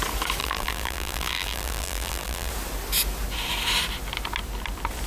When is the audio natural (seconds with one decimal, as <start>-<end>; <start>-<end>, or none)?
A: 0.0-0.4; 2.5-5.1